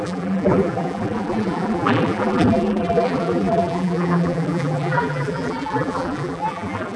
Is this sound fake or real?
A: fake